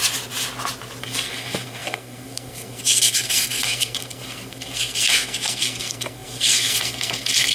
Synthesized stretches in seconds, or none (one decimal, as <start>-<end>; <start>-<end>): 1.0-7.5